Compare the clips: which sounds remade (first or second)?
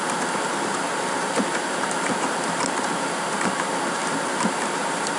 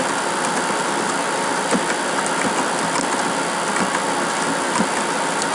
first